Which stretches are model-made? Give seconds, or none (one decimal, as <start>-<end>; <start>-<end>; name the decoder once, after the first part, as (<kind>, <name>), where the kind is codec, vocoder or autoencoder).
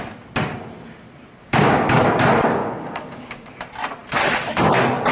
1.4-2.0 (codec, DAC); 2.6-3.5